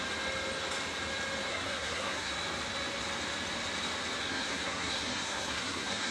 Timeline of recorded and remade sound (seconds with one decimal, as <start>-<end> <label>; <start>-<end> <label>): 0.0-1.5 recorded; 1.5-2.3 remade; 2.3-4.2 recorded; 4.2-6.1 remade